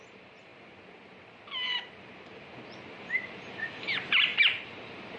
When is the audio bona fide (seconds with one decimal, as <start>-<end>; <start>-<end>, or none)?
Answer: 0.5-3.0